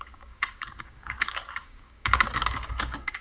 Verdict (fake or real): fake